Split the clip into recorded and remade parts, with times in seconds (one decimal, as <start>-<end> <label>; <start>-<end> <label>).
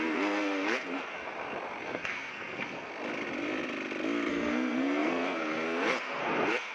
0.0-1.0 remade; 1.0-1.8 recorded; 1.8-2.9 remade; 2.9-4.3 recorded; 4.3-6.7 remade